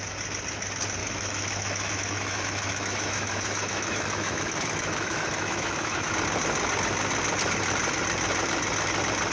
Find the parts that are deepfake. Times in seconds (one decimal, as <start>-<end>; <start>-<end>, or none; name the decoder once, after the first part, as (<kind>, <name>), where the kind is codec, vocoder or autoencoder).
1.0-6.1 (autoencoder, DAC-VAE)

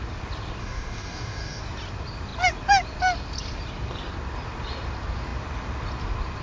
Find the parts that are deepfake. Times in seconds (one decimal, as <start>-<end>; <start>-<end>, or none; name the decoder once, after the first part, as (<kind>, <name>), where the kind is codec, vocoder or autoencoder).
0.6-1.6 (codec, DAC)

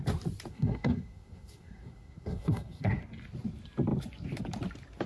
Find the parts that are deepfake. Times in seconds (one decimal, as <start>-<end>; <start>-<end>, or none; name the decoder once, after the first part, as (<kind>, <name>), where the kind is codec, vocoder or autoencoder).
0.5-3.0 (codec, SNAC)

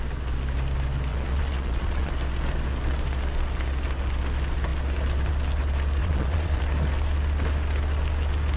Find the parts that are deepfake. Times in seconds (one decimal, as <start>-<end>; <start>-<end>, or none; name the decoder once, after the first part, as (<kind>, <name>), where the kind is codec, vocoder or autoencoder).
1.1-2.1 (vocoder, Vocos); 6.0-6.6